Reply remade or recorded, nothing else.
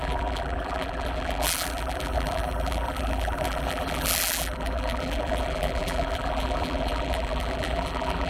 remade